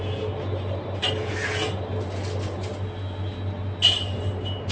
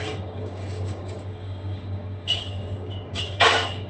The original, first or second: first